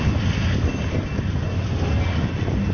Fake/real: real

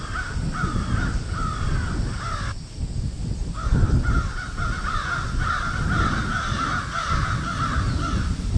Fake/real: real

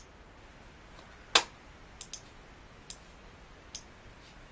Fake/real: real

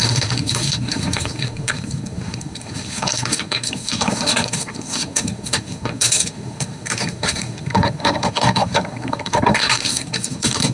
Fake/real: fake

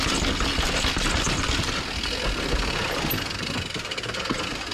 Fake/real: real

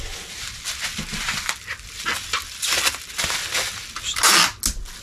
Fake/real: real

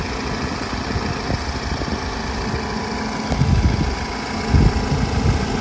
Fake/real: real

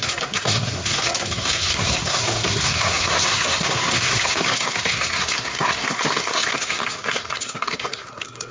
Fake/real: fake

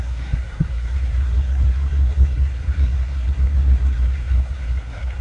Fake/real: fake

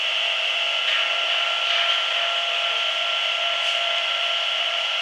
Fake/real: real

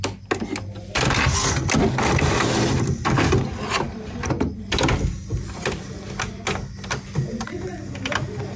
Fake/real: real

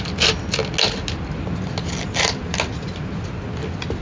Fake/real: real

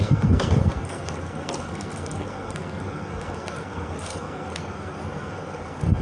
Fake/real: fake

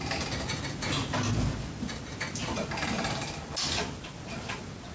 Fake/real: real